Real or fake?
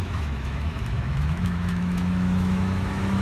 fake